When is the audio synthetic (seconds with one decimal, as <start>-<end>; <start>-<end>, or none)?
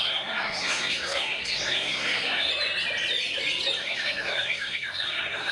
0.0-2.5; 3.8-5.5